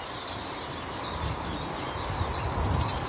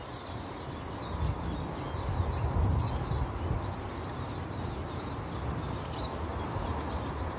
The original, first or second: second